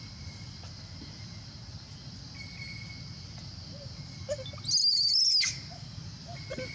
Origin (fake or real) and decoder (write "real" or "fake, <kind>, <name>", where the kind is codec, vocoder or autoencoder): real